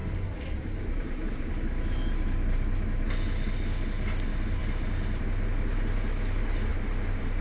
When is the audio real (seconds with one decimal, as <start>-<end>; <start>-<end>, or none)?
1.5-6.7